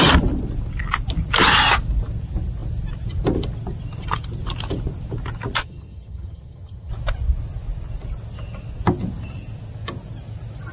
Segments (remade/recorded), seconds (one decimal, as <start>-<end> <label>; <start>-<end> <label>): 0.0-5.6 recorded; 5.6-6.9 remade; 6.9-10.7 recorded